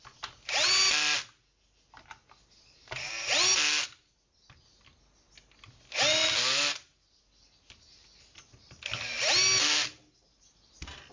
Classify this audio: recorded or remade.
recorded